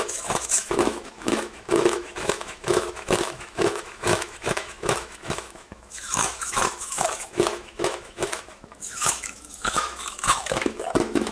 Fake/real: fake